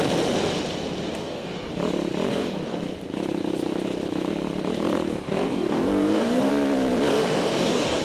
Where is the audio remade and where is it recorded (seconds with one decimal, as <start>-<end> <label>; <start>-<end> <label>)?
0.0-1.2 recorded; 1.2-1.7 remade; 1.7-2.3 recorded; 2.3-2.8 remade; 2.8-5.1 recorded; 5.1-6.5 remade; 6.5-7.1 recorded; 7.1-8.0 remade

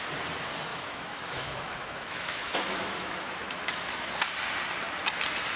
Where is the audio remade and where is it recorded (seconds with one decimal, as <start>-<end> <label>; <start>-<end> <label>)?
0.0-0.7 recorded; 0.7-4.1 remade; 4.1-5.6 recorded